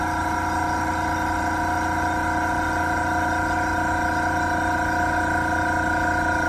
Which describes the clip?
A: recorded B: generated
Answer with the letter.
A